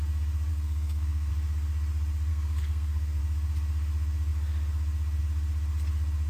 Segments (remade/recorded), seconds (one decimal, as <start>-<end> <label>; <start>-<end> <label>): 0.0-0.5 recorded; 0.5-1.3 remade; 1.3-2.3 recorded; 2.3-3.2 remade; 3.2-6.3 recorded